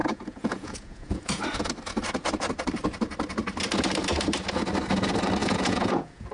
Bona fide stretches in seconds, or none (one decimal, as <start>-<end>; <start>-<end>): 1.4-5.4